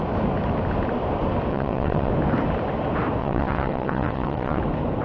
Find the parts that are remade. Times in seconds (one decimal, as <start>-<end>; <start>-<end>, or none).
1.5-2.1; 3.2-4.6